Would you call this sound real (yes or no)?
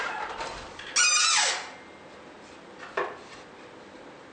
yes